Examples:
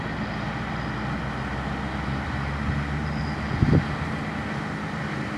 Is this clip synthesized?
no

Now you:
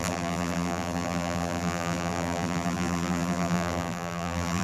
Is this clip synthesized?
yes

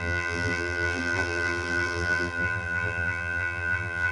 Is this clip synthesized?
yes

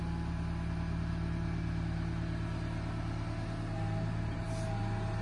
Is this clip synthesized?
no